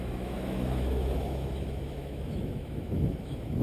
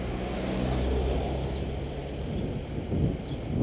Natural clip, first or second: second